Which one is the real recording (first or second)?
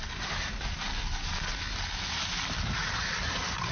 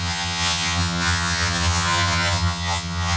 first